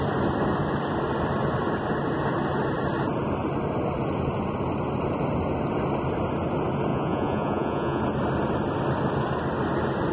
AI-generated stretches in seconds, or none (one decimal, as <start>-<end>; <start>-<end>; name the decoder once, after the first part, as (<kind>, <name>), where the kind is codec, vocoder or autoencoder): 6.9-8.0 (vocoder, Vocos)